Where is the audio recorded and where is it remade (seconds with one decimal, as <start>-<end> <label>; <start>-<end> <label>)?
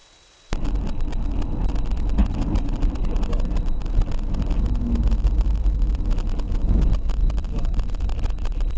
0.0-1.7 remade; 1.7-2.2 recorded; 2.2-6.1 remade; 6.1-7.2 recorded; 7.2-8.8 remade